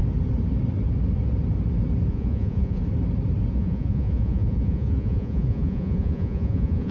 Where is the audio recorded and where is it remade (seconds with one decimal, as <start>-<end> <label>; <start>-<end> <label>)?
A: 0.0-2.1 recorded; 2.1-2.8 remade; 2.8-3.5 recorded; 3.5-6.9 remade